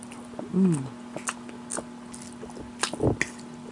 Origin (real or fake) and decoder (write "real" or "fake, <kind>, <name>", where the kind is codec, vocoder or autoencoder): real